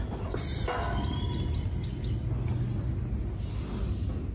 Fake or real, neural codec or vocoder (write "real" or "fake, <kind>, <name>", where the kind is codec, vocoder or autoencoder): real